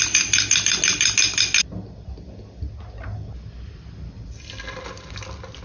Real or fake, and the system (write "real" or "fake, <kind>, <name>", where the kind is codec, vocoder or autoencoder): real